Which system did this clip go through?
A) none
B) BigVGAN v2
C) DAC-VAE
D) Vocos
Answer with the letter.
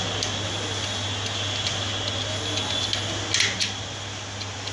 A